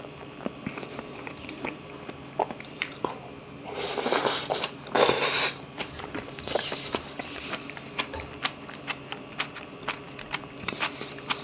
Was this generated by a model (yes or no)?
yes